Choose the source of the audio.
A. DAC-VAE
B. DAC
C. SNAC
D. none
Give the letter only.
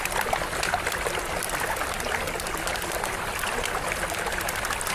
D